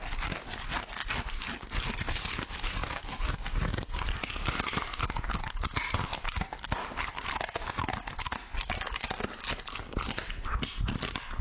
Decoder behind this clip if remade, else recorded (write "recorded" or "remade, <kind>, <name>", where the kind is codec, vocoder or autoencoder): recorded